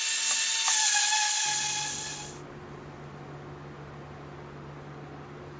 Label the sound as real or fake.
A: real